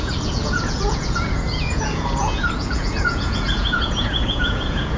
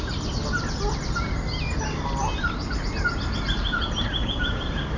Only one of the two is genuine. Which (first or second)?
second